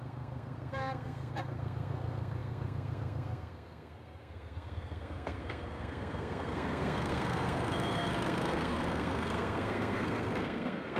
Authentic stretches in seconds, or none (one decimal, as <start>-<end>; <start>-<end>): none